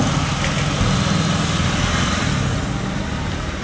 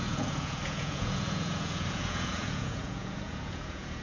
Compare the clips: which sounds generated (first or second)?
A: second